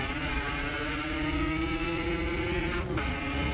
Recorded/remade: remade